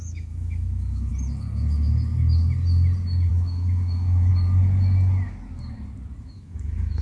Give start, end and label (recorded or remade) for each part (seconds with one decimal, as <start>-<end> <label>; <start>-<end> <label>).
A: 0.0-1.1 remade; 1.1-3.3 recorded; 3.3-4.3 remade; 4.3-6.2 recorded; 6.2-7.0 remade